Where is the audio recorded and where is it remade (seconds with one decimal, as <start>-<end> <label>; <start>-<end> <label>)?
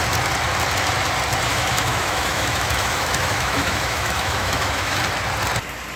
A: 0.0-1.5 recorded; 1.5-5.0 remade; 5.0-6.0 recorded